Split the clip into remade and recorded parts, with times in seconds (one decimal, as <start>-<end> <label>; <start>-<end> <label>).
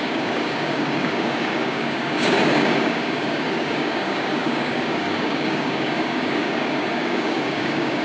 0.0-8.0 remade